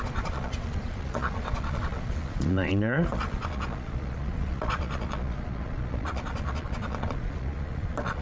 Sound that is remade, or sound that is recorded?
remade